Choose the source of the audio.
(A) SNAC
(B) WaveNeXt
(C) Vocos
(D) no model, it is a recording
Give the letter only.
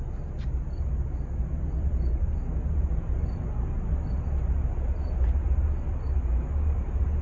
D